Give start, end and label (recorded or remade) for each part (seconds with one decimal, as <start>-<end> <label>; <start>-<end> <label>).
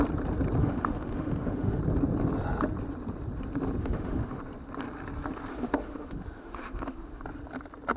0.0-0.6 recorded; 0.6-1.8 remade; 1.8-3.8 recorded; 3.8-4.4 remade; 4.4-5.5 recorded; 5.5-7.2 remade; 7.2-8.0 recorded